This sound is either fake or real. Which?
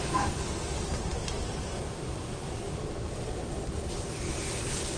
real